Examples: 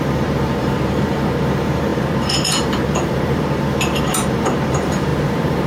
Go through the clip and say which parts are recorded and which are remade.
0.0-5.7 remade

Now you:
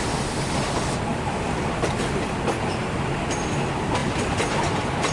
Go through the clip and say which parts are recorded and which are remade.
0.0-1.1 recorded; 1.1-2.8 remade; 2.8-4.0 recorded; 4.0-5.1 remade

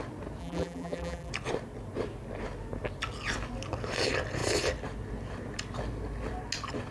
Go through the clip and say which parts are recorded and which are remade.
0.0-0.4 recorded; 0.4-1.3 remade; 1.3-6.9 recorded